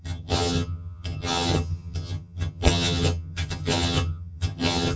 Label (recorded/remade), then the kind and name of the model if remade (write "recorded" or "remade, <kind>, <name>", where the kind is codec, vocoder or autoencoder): remade, vocoder, HiFi-GAN